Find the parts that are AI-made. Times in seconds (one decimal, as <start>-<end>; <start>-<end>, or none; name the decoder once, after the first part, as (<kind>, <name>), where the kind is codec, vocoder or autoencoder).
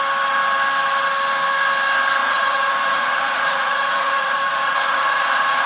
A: 2.2-5.7 (vocoder, Vocos)